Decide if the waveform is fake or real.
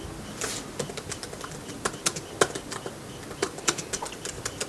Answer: real